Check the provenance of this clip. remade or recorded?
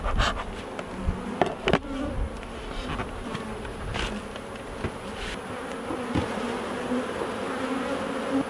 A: recorded